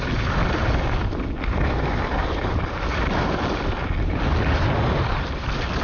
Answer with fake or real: real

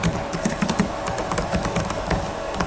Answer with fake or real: fake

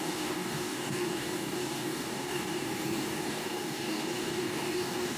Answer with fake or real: fake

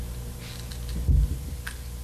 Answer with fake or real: real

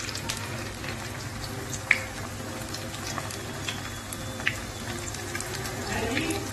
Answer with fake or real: real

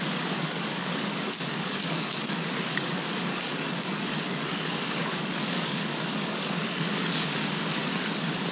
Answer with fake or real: fake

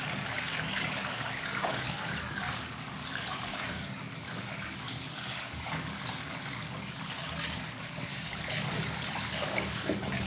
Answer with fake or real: fake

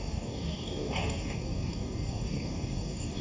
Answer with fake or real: fake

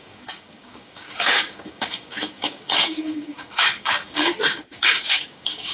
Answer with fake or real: fake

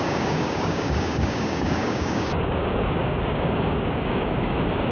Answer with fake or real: fake